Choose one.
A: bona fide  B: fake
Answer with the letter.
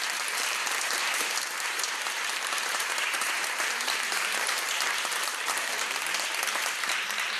B